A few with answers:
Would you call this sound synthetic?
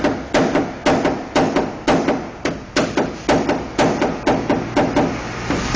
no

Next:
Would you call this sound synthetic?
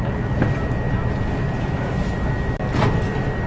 no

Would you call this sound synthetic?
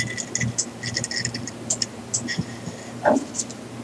no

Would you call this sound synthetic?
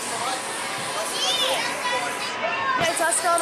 no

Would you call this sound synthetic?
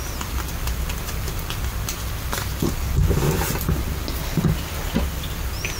no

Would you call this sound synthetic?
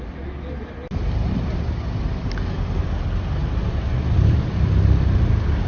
no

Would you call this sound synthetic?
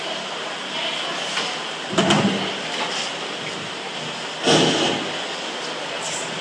no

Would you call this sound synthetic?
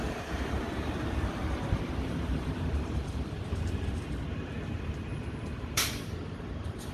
yes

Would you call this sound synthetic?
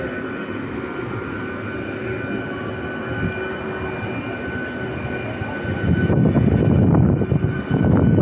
no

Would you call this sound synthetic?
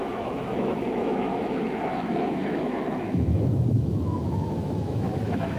yes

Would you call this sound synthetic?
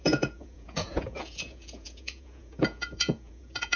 yes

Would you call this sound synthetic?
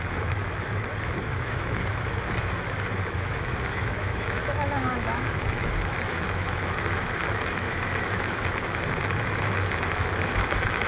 yes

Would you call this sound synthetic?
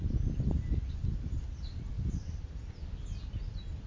no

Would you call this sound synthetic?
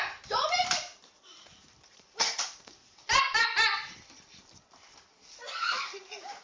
yes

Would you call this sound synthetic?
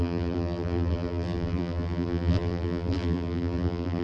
yes